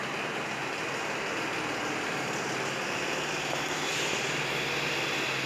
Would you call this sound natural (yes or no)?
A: yes